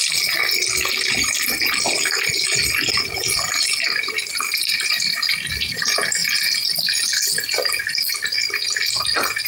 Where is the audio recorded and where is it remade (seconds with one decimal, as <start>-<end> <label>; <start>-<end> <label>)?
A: 0.0-4.2 recorded; 4.2-5.6 remade; 5.6-9.5 recorded